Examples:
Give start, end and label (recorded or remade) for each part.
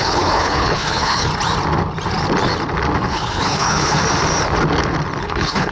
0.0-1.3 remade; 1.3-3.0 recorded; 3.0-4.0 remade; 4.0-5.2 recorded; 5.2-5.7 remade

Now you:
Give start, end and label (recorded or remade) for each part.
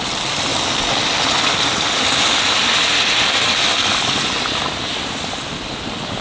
0.0-6.2 recorded